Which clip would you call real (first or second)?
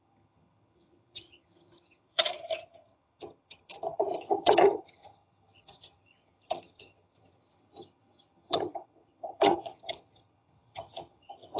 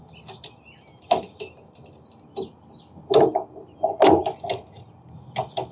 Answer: second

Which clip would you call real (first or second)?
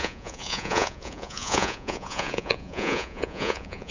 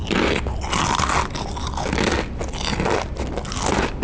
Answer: second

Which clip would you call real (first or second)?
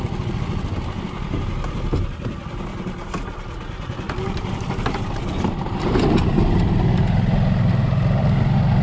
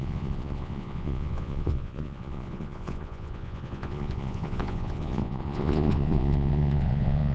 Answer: first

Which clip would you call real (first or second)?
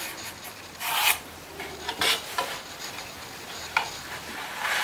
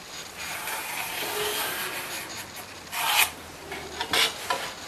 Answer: second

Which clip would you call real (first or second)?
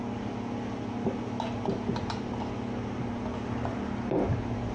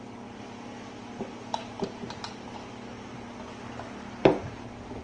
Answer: first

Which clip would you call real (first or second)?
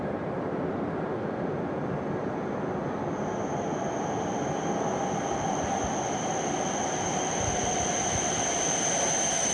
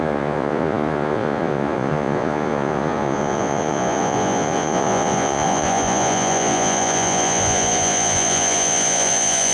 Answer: first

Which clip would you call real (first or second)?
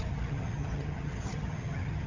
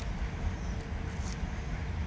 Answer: second